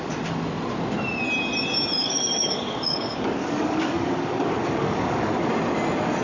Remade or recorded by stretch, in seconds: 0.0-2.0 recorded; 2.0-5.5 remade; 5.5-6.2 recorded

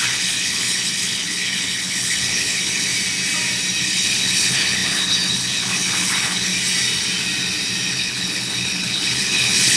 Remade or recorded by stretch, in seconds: 0.0-2.9 remade; 2.9-3.8 recorded; 3.8-6.5 remade; 6.5-7.9 recorded; 7.9-9.8 remade

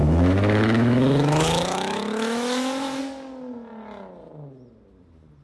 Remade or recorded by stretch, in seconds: 0.0-3.0 remade; 3.0-5.4 recorded

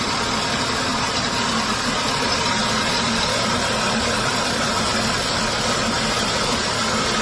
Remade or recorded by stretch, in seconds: 0.0-7.2 recorded

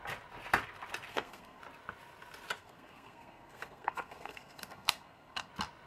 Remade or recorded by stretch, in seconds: 0.0-1.1 recorded; 1.1-1.6 remade; 1.6-2.6 recorded; 2.6-5.5 remade; 5.5-5.9 recorded

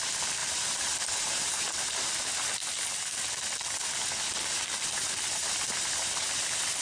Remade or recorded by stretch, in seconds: 0.0-0.4 recorded; 0.4-2.1 remade; 2.1-6.8 recorded